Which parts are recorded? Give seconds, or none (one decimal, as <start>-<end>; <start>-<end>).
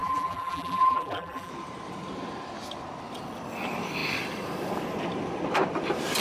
1.5-6.2